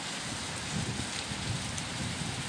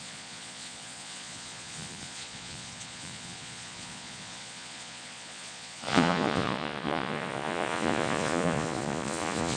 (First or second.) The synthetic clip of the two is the second